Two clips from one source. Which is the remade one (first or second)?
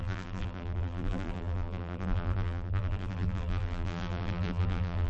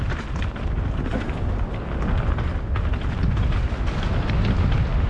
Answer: first